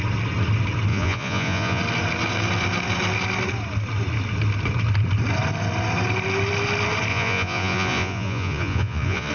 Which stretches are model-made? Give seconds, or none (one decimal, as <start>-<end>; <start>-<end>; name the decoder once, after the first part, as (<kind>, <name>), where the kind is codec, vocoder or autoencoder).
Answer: 0.9-1.8 (vocoder, Vocos); 7.1-9.3